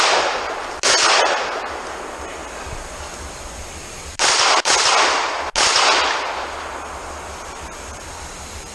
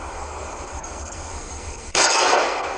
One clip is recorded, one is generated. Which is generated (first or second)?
second